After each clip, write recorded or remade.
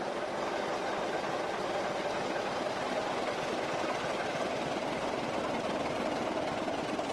recorded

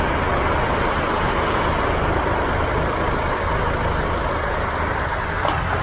recorded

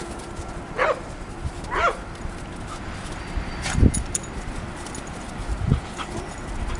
recorded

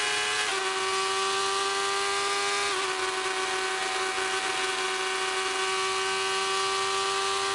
recorded